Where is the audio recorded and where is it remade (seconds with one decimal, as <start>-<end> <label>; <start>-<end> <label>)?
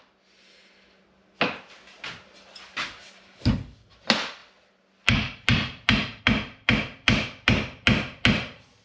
0.0-8.8 recorded